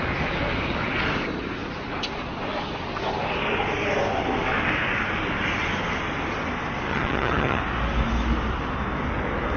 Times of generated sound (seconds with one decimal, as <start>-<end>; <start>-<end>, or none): 6.9-7.6